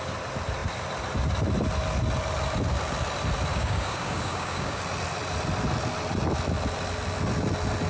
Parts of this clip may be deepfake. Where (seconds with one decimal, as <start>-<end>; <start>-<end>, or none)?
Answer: 3.5-4.8